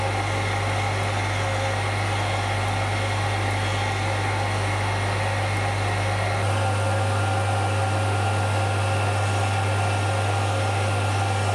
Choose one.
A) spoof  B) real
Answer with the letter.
B